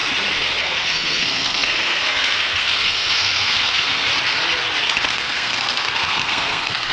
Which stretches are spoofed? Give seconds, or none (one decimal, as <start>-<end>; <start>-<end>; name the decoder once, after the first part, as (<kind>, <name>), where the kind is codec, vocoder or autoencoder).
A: 0.6-4.1 (codec, SNAC); 5.1-6.9

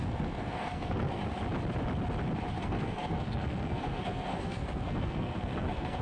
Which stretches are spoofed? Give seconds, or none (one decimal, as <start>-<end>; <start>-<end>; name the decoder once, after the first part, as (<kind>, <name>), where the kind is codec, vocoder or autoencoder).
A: 0.0-1.2 (codec, SNAC); 2.6-6.0

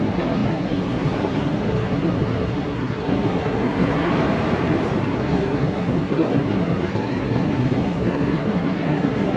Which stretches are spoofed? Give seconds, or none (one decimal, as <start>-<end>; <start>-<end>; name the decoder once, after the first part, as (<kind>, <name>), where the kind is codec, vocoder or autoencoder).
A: 0.0-4.1 (codec, SNAC); 5.0-9.4

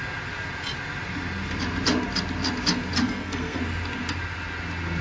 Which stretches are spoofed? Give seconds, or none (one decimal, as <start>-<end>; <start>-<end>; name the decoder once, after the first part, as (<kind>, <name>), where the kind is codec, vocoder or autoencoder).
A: 3.0-3.6 (codec, SNAC)

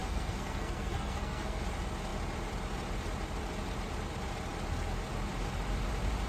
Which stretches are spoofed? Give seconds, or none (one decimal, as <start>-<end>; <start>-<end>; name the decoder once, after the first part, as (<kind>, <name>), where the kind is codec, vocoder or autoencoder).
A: 0.0-1.6 (codec, SNAC)

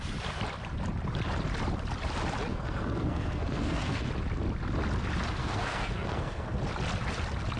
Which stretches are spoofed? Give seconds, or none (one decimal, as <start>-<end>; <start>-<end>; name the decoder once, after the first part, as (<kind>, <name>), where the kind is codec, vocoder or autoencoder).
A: 2.5-4.1 (codec, SNAC); 5.4-6.6

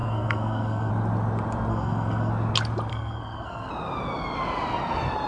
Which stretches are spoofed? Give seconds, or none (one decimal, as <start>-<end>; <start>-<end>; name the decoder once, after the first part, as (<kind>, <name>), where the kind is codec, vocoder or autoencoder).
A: 0.0-0.9 (codec, SNAC); 1.7-2.3; 2.9-3.7

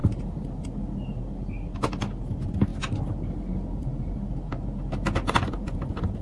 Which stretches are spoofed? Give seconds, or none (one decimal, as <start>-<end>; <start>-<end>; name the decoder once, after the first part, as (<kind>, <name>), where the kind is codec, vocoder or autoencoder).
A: none